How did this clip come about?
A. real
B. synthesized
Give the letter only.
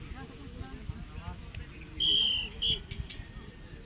A